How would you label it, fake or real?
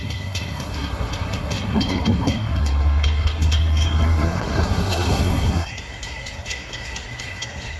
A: fake